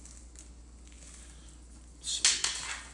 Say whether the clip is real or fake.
real